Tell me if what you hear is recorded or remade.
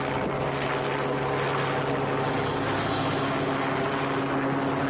recorded